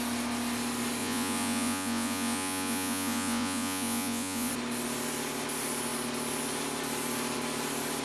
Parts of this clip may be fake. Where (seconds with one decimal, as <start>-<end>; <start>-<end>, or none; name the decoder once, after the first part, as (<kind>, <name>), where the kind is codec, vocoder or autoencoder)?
1.0-4.5 (vocoder, Vocos)